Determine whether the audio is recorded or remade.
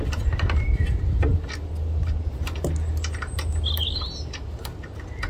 recorded